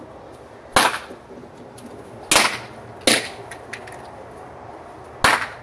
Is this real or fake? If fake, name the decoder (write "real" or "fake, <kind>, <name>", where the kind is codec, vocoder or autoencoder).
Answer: real